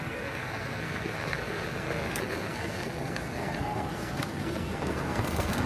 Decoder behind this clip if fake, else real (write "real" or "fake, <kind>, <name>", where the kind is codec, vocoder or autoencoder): fake, codec, SNAC